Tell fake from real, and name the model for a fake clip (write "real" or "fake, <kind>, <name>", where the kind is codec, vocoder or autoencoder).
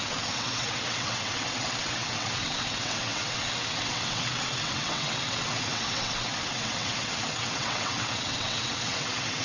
fake, vocoder, WaveNeXt